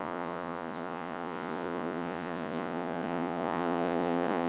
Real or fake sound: fake